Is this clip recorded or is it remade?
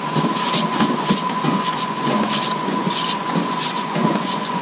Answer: remade